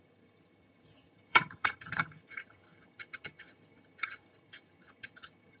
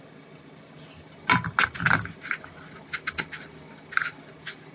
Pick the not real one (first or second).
first